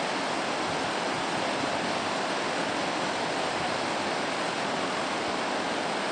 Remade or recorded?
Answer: recorded